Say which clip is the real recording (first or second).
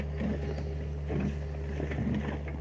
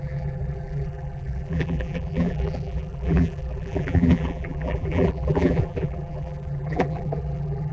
first